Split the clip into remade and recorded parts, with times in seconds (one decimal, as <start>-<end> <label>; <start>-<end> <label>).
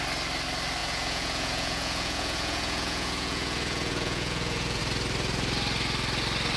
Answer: 0.0-0.8 recorded; 0.8-4.8 remade; 4.8-6.6 recorded